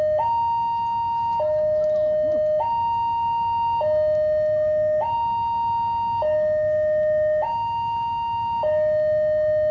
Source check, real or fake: real